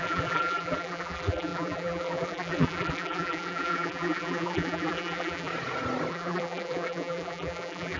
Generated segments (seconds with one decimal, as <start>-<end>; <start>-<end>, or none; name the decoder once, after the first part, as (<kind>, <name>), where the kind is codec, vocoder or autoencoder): 0.0-5.5 (vocoder, BigVGAN v2); 6.1-8.0

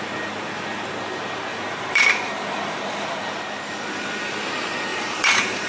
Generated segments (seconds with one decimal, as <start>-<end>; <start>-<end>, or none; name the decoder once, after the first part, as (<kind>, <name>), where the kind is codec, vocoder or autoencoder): 1.5-3.3 (vocoder, BigVGAN v2); 4.9-5.7

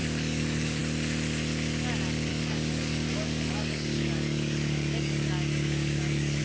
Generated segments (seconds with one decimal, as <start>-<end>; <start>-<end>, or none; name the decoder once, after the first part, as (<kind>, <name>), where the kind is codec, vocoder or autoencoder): 0.0-0.8 (codec, DAC); 2.3-6.4

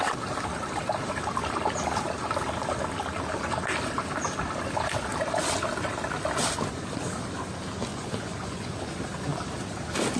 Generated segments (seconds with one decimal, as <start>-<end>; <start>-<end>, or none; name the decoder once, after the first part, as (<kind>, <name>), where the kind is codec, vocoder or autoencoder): 7.9-9.0 (vocoder, Vocos)

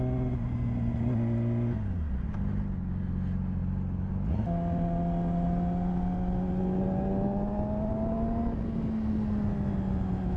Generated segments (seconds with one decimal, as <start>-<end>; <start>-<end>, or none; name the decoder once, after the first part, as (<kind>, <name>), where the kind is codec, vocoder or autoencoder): none

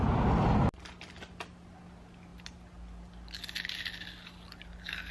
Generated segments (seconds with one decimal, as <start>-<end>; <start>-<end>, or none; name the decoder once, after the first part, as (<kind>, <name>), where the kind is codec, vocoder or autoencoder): none

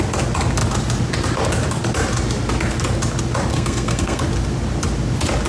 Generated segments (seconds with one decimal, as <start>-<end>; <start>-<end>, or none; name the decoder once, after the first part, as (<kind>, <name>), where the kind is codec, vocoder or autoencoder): 3.5-4.2 (codec, SNAC)